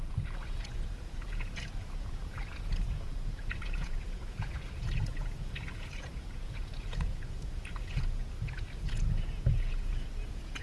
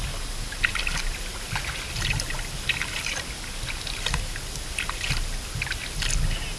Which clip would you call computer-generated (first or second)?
first